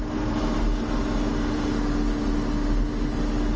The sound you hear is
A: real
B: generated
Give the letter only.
A